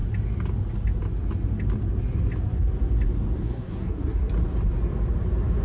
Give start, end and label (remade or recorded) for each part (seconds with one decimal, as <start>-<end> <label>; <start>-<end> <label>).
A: 0.0-3.4 recorded; 3.4-4.3 remade; 4.3-5.6 recorded

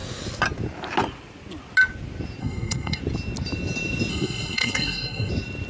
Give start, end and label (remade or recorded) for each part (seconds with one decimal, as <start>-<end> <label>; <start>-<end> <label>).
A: 0.0-2.4 recorded; 2.4-3.0 remade; 3.0-4.1 recorded; 4.1-5.3 remade; 5.3-5.7 recorded

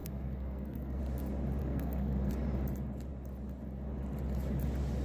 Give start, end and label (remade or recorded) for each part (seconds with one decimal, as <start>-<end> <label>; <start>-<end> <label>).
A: 0.0-1.0 remade; 1.0-1.6 recorded; 1.6-2.3 remade; 2.3-5.0 recorded

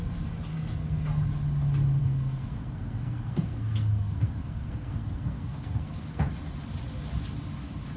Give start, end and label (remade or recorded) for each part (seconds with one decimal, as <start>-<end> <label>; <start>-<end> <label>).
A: 0.0-0.5 recorded; 0.5-1.2 remade; 1.2-2.0 recorded; 2.0-6.3 remade; 6.3-8.0 recorded

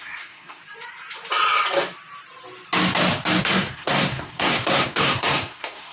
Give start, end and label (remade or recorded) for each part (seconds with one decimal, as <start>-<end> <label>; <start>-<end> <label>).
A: 0.0-0.6 remade; 0.6-3.4 recorded; 3.4-5.9 remade

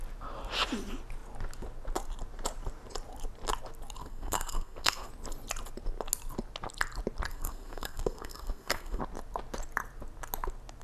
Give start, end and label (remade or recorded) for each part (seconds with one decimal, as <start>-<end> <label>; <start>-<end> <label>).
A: 0.0-4.0 recorded; 4.0-5.1 remade; 5.1-7.3 recorded; 7.3-9.0 remade; 9.0-10.8 recorded

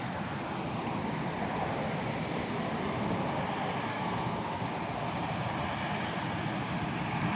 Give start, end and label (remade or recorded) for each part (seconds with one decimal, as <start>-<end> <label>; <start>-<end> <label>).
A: 0.0-3.9 recorded; 3.9-4.6 remade; 4.6-7.4 recorded

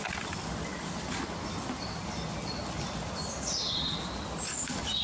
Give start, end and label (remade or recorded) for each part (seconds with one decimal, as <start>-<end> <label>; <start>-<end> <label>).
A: 0.0-5.0 recorded